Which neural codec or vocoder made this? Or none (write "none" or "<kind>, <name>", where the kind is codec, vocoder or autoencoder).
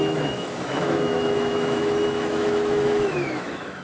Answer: autoencoder, DAC-VAE